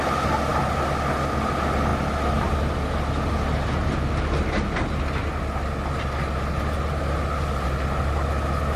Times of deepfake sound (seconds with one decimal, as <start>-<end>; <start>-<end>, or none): none